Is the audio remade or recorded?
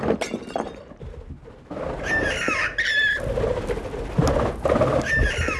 recorded